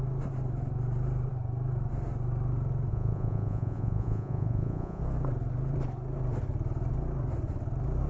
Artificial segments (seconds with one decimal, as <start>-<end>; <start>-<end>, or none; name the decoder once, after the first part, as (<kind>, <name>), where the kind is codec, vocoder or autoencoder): 2.9-5.0 (vocoder, Vocos)